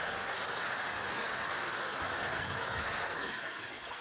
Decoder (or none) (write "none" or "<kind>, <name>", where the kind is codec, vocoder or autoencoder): codec, SNAC